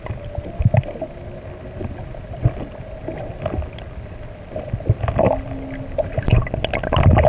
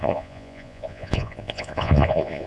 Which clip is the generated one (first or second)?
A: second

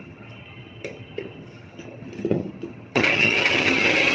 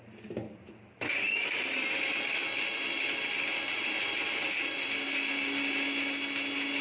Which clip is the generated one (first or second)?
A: first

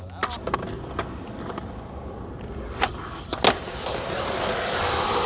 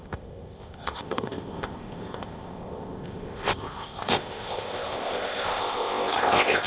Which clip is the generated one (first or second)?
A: second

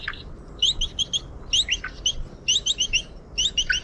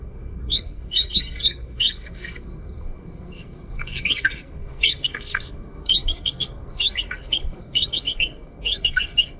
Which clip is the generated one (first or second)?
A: second